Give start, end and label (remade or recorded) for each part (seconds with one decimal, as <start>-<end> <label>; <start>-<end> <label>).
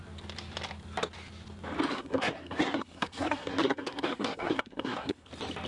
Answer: 0.0-1.9 recorded; 1.9-5.3 remade; 5.3-5.7 recorded